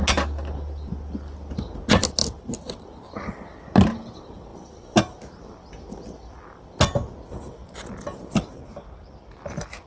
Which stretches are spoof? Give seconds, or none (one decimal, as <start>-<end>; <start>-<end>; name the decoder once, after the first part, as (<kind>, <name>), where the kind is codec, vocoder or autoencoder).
none